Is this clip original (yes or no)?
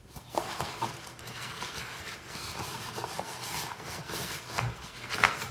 no